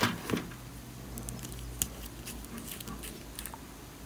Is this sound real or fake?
real